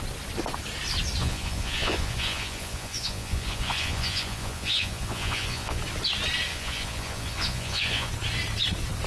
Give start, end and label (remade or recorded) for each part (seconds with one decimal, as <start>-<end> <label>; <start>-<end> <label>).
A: 0.0-1.2 recorded; 1.2-5.8 remade; 5.8-6.5 recorded; 6.5-8.1 remade; 8.1-9.1 recorded